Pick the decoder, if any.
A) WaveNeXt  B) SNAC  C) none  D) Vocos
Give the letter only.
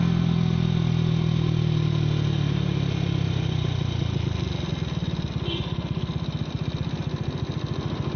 C